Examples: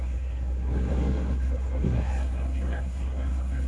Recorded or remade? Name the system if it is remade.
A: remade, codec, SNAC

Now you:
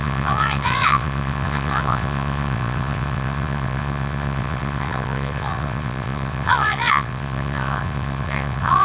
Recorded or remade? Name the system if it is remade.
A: remade, vocoder, WaveNeXt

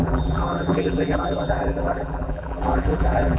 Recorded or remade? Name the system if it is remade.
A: remade, vocoder, BigVGAN v2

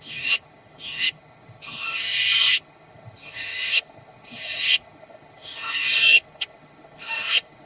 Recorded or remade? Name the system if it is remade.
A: remade, autoencoder, DAC-VAE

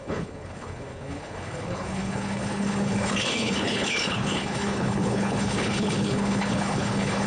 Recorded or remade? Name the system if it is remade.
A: remade, codec, HILCodec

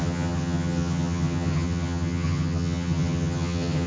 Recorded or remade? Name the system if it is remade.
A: remade, vocoder, HiFi-GAN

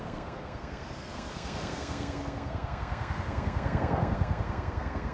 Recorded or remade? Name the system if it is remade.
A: remade, codec, SNAC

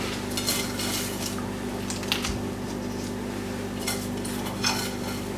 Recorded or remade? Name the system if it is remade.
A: recorded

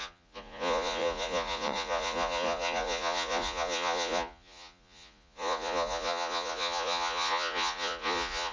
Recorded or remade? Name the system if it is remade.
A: remade, vocoder, Vocos